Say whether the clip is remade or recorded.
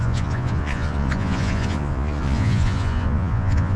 remade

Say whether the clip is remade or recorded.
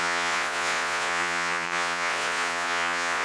remade